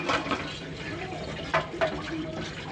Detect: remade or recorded recorded